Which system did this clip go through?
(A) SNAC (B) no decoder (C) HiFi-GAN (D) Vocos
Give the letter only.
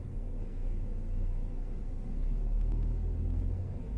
A